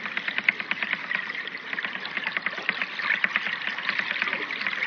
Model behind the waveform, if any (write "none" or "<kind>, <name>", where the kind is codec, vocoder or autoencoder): none